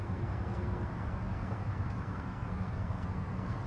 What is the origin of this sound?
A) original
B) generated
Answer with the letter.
B